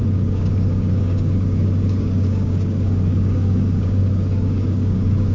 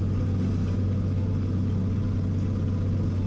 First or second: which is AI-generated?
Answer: first